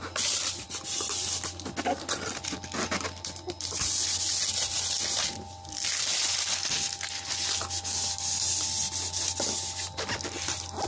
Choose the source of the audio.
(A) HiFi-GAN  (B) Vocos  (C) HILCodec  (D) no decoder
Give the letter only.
D